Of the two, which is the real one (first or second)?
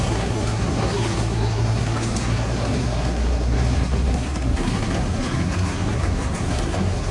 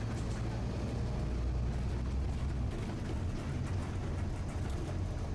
second